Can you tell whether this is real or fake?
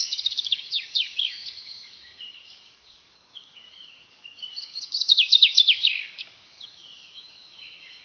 fake